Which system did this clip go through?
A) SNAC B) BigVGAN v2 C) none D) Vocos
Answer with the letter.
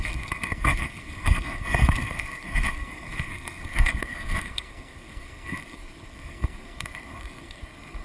A